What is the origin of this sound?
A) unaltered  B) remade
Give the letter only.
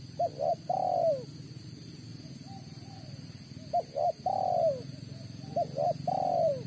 A